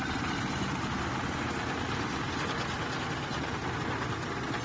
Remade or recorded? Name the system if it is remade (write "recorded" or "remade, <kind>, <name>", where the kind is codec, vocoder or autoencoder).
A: recorded